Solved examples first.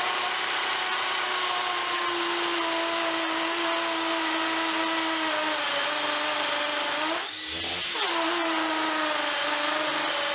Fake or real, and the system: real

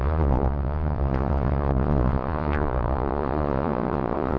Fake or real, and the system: fake, vocoder, Vocos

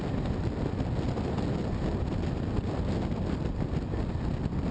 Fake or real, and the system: real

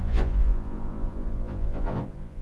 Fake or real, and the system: fake, vocoder, Vocos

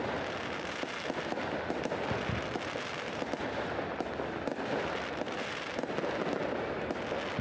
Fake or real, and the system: real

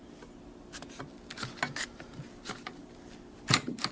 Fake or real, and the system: real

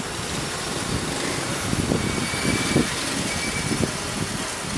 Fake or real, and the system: real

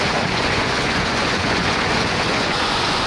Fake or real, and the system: fake, vocoder, Vocos